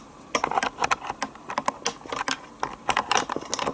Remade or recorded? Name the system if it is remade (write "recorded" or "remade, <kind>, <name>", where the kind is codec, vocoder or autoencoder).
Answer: recorded